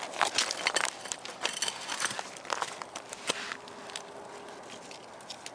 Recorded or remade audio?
recorded